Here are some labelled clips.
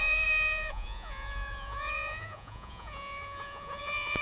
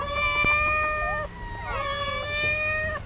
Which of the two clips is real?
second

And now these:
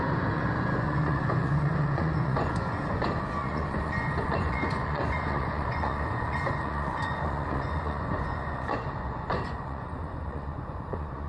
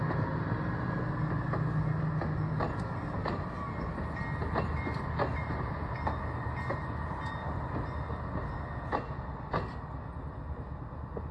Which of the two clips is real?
second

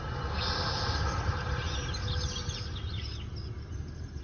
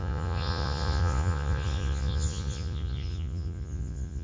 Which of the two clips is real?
first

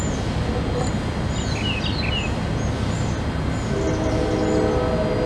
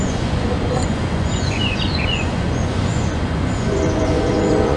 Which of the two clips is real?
first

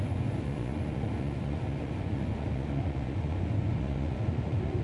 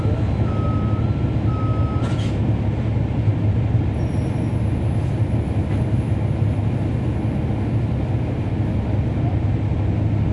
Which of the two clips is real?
second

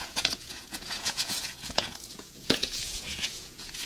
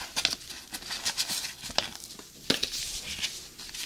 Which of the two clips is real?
second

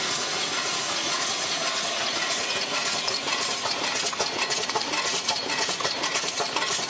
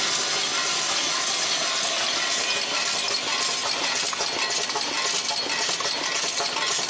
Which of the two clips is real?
second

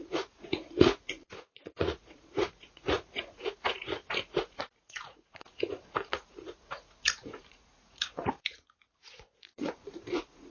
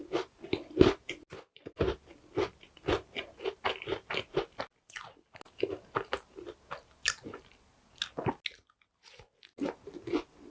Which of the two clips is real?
second